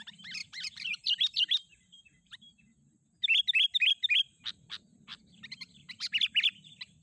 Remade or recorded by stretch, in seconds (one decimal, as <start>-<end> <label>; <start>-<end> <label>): 0.0-0.4 recorded; 0.4-2.0 remade; 2.0-7.0 recorded